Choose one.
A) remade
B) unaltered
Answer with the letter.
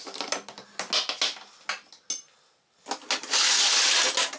B